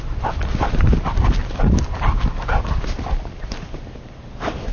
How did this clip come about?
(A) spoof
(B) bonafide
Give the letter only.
B